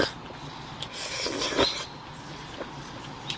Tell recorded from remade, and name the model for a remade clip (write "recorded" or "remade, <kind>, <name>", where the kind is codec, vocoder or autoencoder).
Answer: recorded